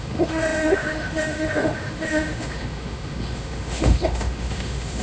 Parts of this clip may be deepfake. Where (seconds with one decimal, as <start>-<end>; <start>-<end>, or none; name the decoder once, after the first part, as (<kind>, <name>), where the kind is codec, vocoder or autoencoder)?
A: 0.0-5.0 (autoencoder, DAC-VAE)

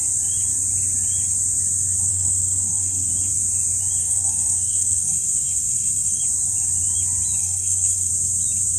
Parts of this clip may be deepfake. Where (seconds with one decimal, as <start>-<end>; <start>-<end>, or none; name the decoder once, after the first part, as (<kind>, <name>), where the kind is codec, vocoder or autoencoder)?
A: 2.1-3.1 (codec, SNAC); 4.0-6.2; 7.4-8.1

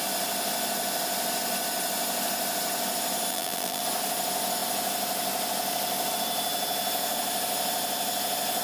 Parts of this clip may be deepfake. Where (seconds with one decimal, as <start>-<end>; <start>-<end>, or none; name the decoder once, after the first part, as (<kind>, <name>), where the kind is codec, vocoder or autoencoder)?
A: 3.3-3.8 (vocoder, BigVGAN v2)

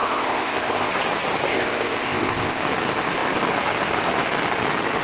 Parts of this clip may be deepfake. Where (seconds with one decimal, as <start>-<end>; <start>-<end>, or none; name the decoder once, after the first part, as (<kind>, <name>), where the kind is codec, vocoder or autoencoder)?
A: 0.0-0.9 (codec, ZipCodec); 1.5-2.6

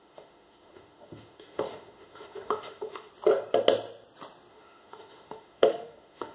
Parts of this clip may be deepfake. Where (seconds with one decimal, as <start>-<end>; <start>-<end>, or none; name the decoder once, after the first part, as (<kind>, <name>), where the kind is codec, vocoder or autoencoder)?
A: 0.0-3.1 (autoencoder, DAC-VAE); 4.5-6.3